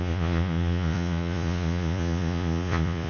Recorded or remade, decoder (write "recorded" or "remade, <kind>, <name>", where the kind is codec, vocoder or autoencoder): remade, vocoder, Vocos